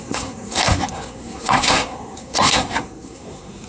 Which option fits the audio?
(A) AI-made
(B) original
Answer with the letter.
A